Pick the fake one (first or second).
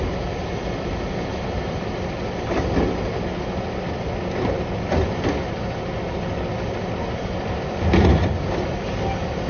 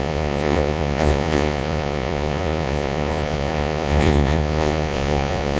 second